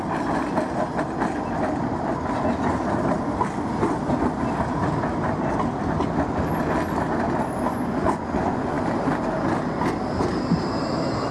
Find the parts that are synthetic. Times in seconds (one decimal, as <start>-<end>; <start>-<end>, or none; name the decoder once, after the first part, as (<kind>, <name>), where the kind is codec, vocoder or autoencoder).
7.7-8.8 (vocoder, Vocos)